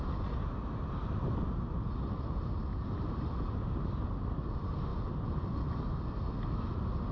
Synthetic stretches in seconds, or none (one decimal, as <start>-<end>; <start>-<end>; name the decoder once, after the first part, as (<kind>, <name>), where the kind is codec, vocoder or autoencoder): none